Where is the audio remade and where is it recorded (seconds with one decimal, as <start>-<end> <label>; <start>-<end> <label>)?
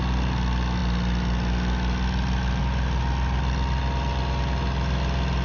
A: 0.0-5.4 recorded